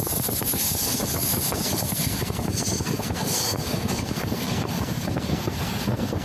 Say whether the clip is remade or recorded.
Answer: remade